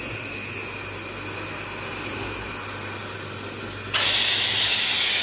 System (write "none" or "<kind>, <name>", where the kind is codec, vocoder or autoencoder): none